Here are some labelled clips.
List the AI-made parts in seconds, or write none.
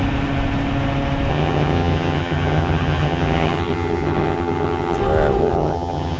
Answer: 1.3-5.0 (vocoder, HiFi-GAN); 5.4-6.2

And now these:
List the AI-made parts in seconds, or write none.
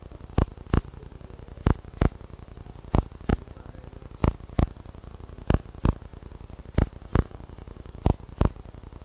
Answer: 7.1-8.0 (codec, DAC)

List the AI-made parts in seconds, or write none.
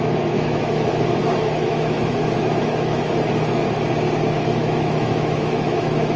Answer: 0.0-3.6 (autoencoder, DAC-VAE); 4.2-6.2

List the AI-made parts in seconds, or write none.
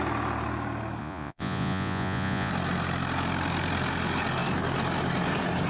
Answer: 1.0-2.5 (vocoder, Vocos)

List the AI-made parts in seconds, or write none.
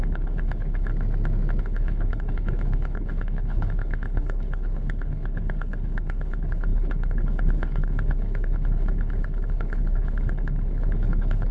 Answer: 0.0-0.9 (codec, HILCodec); 1.6-11.5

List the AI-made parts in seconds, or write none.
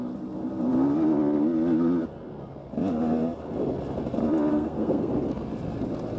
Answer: 4.5-5.1 (codec, SNAC)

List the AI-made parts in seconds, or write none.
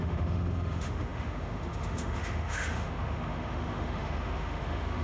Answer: 0.0-5.0 (autoencoder, DAC-VAE)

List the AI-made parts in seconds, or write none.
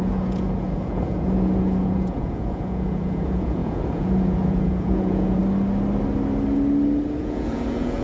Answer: 0.0-5.4 (vocoder, Vocos); 7.2-8.0